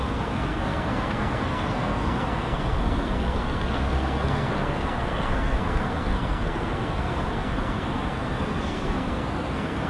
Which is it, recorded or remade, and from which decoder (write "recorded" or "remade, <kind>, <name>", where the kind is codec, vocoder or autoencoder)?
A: remade, codec, SNAC